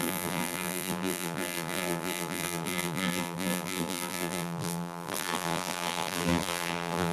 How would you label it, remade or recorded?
remade